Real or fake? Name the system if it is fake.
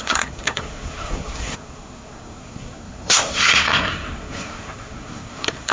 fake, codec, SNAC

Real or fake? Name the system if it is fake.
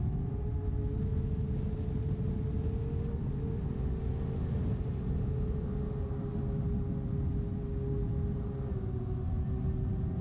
real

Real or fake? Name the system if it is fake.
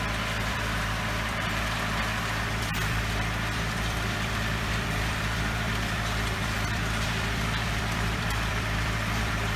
fake, vocoder, BigVGAN v2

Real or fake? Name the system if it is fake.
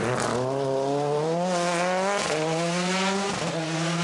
real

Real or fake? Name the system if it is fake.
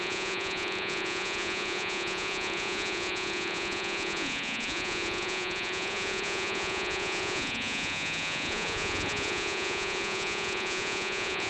fake, vocoder, Vocos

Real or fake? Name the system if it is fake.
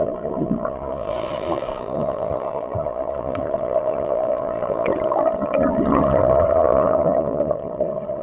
fake, vocoder, Vocos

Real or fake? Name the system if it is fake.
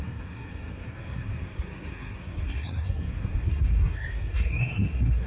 fake, codec, SNAC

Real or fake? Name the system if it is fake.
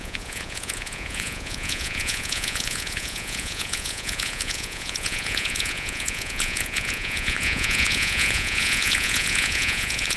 fake, vocoder, Vocos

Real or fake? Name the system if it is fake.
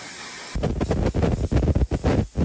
real